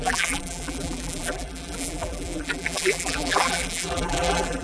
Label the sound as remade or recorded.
remade